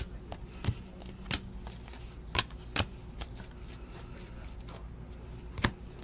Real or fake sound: real